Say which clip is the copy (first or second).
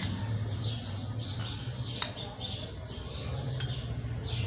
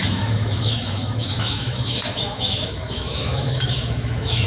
second